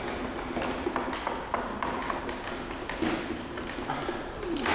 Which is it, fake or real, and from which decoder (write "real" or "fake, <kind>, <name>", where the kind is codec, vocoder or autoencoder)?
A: real